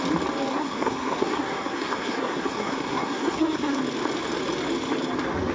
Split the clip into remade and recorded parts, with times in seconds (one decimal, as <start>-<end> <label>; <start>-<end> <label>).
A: 0.0-0.5 recorded; 0.5-3.8 remade; 3.8-5.5 recorded